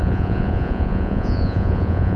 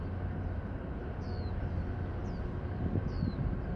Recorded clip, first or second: second